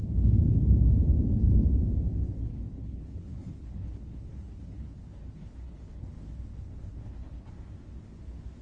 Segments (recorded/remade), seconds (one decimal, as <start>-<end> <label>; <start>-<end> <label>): 0.0-2.5 recorded; 2.5-7.5 remade; 7.5-8.6 recorded